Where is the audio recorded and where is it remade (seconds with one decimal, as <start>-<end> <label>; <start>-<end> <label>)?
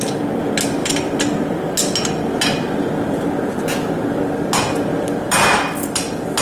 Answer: 0.0-6.4 recorded